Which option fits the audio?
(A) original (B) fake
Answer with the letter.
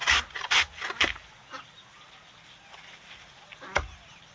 A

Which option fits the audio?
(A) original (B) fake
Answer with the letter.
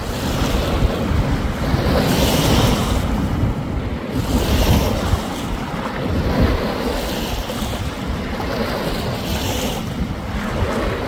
A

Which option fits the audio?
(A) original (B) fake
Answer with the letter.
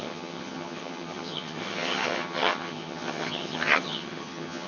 B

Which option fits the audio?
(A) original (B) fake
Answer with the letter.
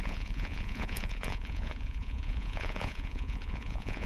B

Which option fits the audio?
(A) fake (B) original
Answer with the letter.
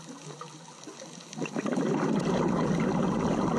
B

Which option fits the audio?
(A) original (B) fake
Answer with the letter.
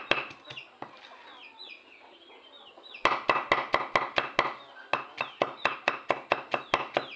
A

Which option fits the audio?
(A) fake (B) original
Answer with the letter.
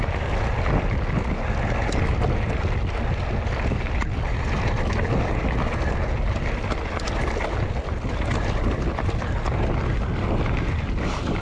B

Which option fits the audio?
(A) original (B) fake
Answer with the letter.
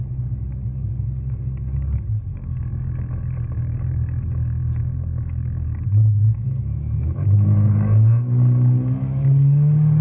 B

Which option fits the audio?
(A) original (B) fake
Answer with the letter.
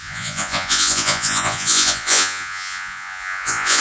B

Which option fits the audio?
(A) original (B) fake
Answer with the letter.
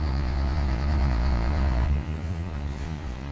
B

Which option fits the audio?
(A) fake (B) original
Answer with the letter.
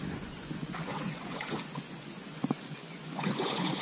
A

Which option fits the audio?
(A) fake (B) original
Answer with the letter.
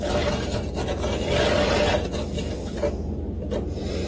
A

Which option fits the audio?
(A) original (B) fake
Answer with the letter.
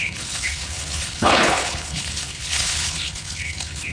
B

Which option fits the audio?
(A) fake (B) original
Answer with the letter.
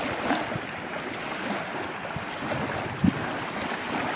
B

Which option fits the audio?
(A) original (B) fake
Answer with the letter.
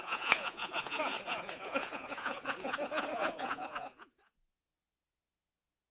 B